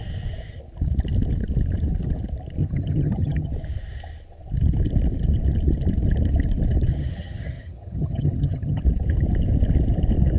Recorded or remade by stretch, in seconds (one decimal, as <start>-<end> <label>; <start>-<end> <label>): 0.0-2.6 recorded; 2.6-3.5 remade; 3.5-6.9 recorded; 6.9-8.8 remade; 8.8-10.4 recorded